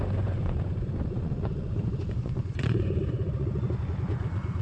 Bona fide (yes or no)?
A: no